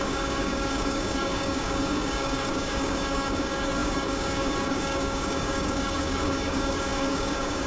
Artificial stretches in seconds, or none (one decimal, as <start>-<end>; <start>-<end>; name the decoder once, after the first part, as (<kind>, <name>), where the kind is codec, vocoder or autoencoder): 0.0-7.7 (codec, DAC)